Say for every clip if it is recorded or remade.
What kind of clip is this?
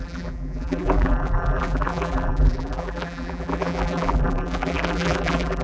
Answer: remade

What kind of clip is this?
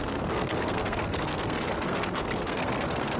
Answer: remade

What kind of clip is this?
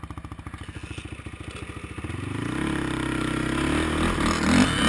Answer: recorded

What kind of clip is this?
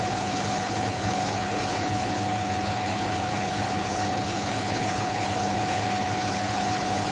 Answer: remade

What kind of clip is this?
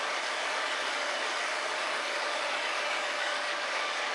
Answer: remade